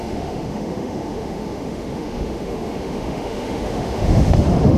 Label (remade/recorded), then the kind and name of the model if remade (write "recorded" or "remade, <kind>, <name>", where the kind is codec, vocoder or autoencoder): remade, autoencoder, DAC-VAE